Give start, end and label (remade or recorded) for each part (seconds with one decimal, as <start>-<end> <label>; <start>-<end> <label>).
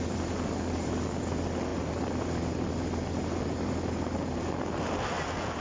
0.0-5.6 recorded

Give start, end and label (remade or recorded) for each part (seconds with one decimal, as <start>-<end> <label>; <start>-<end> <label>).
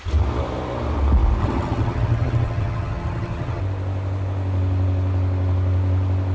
0.0-1.4 recorded; 1.4-3.6 remade; 3.6-6.3 recorded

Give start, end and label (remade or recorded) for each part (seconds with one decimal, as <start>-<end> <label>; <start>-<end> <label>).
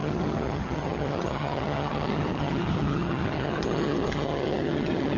0.0-5.2 remade